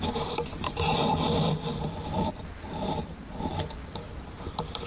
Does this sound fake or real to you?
fake